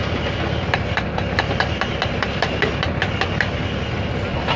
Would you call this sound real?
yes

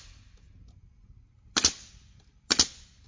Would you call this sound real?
yes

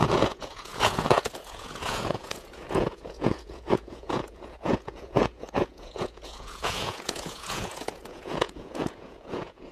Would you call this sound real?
no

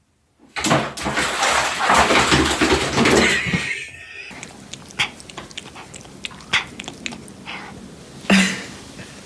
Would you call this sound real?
yes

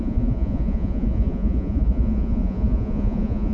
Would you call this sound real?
no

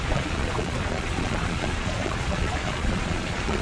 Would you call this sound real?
no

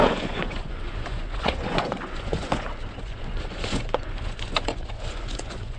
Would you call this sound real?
no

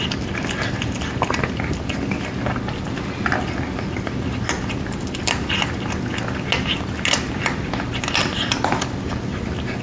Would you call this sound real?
yes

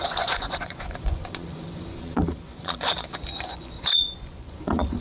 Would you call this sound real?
no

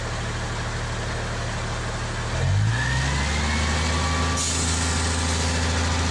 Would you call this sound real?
yes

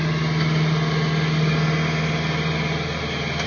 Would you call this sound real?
yes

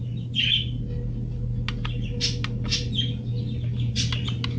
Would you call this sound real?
yes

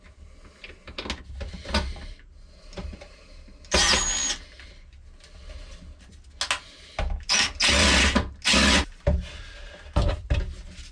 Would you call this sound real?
yes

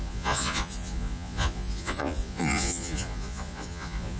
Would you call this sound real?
no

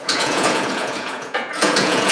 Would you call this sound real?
no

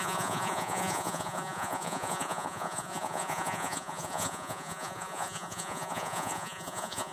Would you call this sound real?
no